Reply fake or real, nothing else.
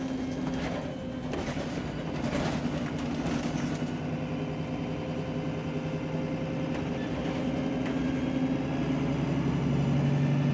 real